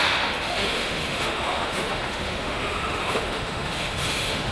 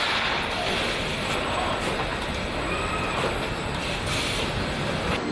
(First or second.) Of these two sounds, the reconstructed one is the first